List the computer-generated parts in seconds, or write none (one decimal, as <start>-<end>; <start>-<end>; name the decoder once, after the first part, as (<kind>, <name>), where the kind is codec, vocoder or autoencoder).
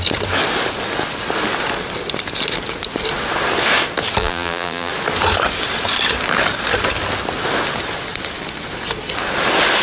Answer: 4.2-4.9 (vocoder, BigVGAN v2)